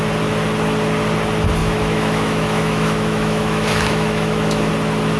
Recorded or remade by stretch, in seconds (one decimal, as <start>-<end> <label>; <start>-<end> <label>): 0.0-1.6 recorded; 1.6-4.7 remade; 4.7-5.2 recorded